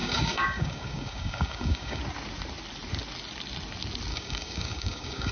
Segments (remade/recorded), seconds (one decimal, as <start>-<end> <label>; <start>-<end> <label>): 0.0-2.0 remade; 2.0-4.1 recorded; 4.1-5.3 remade